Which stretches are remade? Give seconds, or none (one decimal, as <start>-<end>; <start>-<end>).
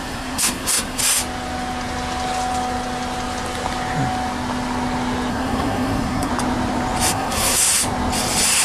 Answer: 0.0-1.0; 5.3-6.3; 7.1-7.7